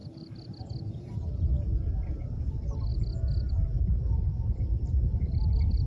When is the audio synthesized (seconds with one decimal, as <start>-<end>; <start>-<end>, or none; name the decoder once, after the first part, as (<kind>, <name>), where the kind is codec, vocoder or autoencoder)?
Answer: none